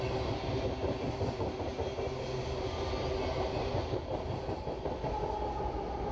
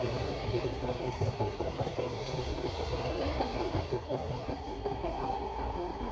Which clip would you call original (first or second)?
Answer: first